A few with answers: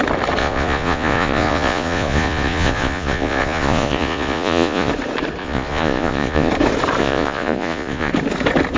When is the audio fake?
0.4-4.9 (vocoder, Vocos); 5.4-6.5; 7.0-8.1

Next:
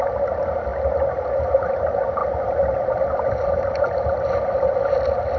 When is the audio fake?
none

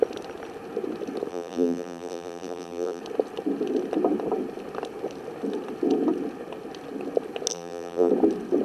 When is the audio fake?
1.3-3.0 (vocoder, BigVGAN v2); 7.5-8.1

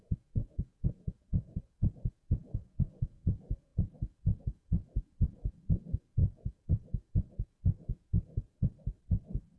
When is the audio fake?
0.0-8.7 (vocoder, Vocos)

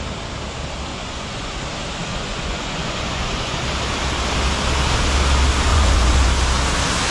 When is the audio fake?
0.9-1.6 (vocoder, Vocos); 2.1-3.6; 5.7-6.3